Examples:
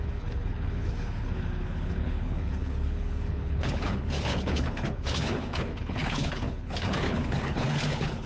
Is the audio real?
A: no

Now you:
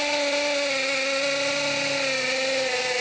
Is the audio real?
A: yes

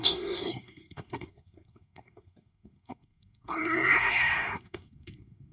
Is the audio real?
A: no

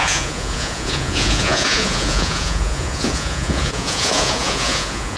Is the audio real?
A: no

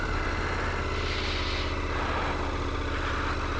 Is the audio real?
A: yes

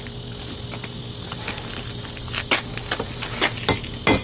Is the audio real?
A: yes